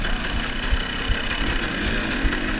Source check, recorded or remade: recorded